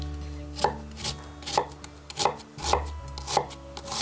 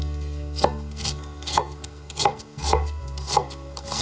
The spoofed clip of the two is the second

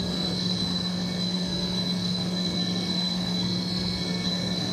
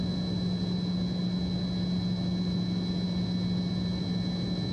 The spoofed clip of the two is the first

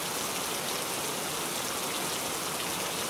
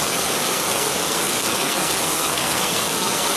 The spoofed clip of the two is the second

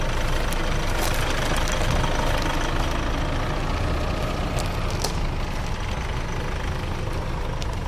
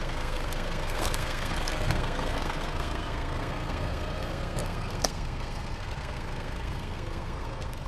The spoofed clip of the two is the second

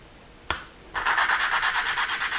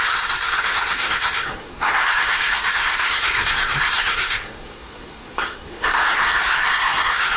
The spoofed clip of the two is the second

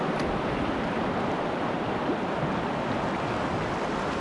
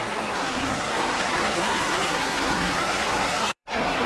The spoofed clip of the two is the second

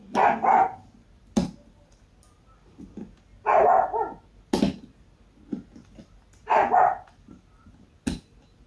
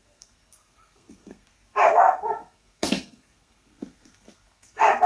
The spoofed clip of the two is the second